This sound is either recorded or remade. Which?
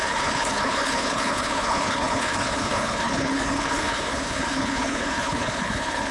remade